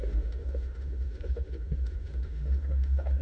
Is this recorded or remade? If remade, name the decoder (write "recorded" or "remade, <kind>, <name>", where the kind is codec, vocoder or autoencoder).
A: remade, autoencoder, DAC-VAE